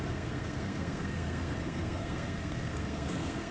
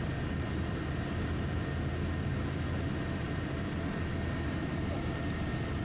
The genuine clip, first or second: second